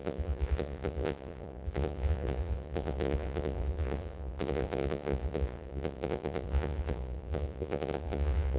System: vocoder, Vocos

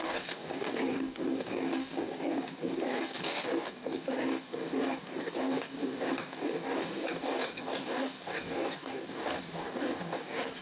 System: codec, DAC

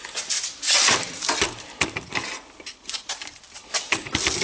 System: vocoder, BigVGAN v2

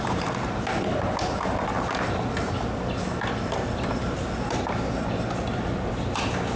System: none